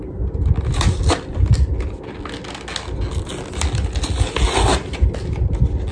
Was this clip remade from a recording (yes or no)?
no